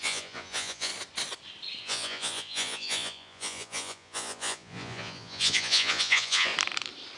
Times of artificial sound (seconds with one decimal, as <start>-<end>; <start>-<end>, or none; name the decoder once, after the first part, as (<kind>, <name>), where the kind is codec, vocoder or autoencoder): 0.0-0.9 (vocoder, Vocos); 1.8-6.5